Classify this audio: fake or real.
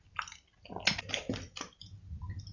real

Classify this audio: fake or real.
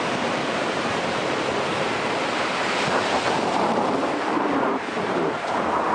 fake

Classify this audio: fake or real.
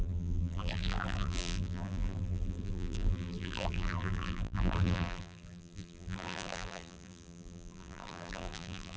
fake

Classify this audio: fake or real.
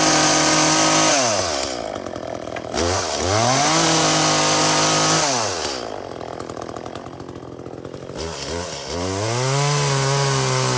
real